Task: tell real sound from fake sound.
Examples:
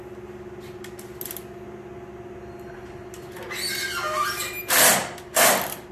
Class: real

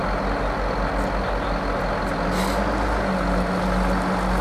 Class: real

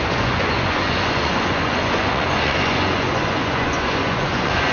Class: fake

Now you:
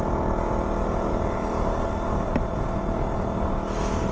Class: real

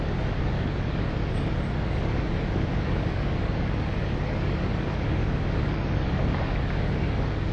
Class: fake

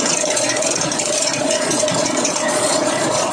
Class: fake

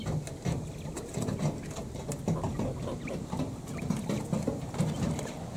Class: real